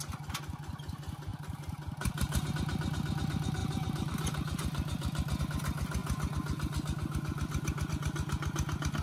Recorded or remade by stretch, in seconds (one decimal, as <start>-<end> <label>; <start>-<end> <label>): 0.0-1.3 recorded; 1.3-2.5 remade; 2.5-3.6 recorded; 3.6-5.4 remade; 5.4-9.0 recorded